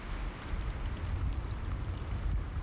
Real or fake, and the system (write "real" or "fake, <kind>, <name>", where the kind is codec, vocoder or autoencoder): real